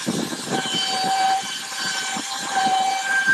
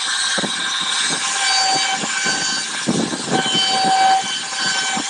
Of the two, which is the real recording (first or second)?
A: second